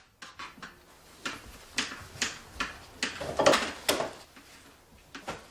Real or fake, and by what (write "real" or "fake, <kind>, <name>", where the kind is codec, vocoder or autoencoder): real